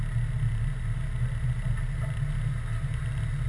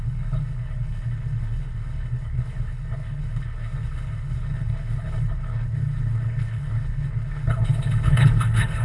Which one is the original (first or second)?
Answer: first